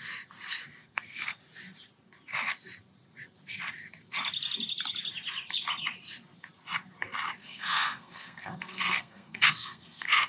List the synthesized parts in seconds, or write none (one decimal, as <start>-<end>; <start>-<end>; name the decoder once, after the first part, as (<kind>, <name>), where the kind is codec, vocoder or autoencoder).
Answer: 0.8-1.4 (codec, SNAC); 7.4-10.3